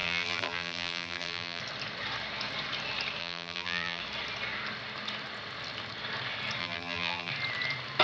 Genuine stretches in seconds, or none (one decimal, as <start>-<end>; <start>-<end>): 1.6-3.2; 4.0-6.6; 7.3-8.0